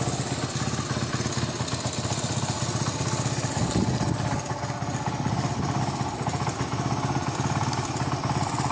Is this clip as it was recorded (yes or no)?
yes